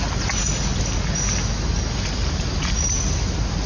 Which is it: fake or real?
real